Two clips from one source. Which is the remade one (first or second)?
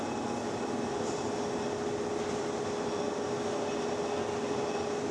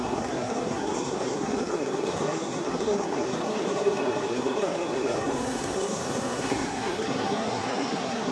second